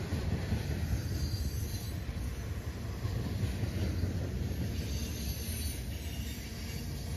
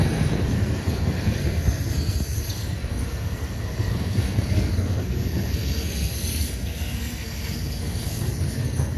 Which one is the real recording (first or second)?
first